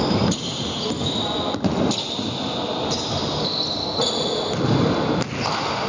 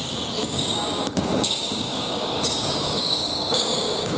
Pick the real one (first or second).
first